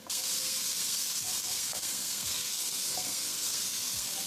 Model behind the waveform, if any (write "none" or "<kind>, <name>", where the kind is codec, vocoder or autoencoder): codec, SNAC